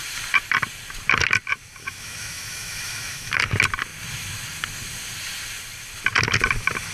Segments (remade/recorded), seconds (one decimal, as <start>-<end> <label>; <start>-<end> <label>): 0.0-1.8 recorded; 1.8-3.3 remade; 3.3-6.9 recorded